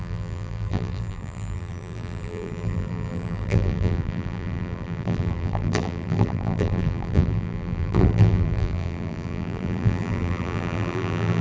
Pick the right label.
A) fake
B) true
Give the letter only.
A